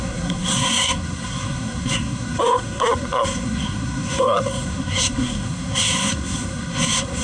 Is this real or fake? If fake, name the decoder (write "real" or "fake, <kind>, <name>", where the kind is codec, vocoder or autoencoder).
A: fake, codec, SNAC